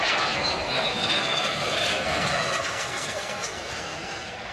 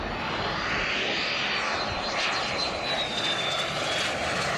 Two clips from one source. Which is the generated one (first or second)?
first